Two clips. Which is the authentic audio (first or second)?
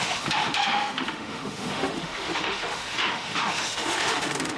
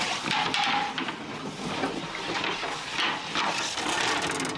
second